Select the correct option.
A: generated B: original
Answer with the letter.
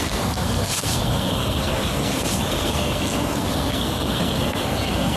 A